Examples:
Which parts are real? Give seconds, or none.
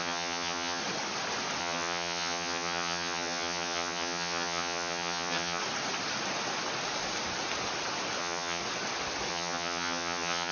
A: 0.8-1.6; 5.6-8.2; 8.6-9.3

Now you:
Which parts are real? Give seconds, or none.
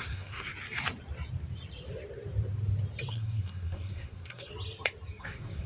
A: 0.5-3.1; 4.5-5.2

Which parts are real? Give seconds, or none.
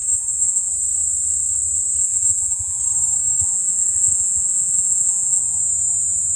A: 0.7-2.0; 2.8-3.4; 5.4-6.4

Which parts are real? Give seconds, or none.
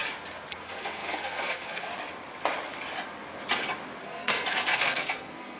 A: 0.0-0.5; 1.9-4.0